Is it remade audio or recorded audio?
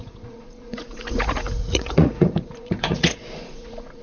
remade